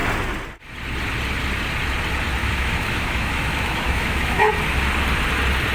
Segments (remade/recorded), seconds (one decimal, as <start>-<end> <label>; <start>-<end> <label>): 0.0-2.4 recorded; 2.4-4.5 remade; 4.5-5.7 recorded